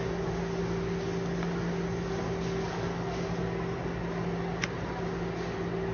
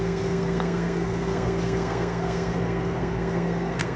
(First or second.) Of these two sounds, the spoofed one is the second